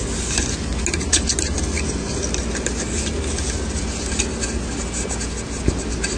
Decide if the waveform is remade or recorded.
recorded